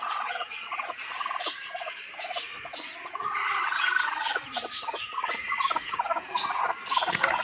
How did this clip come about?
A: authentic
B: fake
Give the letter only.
B